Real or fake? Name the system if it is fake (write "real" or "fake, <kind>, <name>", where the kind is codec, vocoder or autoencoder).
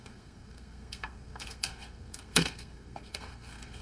fake, codec, SNAC